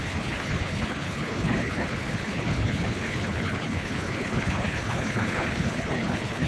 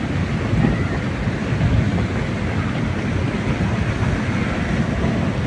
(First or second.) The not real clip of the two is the first